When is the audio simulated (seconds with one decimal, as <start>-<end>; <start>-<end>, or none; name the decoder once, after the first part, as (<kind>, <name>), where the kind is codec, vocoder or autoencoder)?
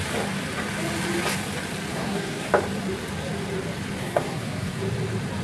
1.9-2.5 (codec, SNAC); 4.0-4.8